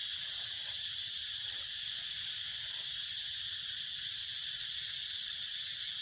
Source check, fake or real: real